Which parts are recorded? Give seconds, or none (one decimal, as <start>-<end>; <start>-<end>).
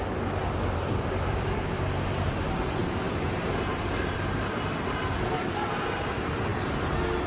6.5-7.3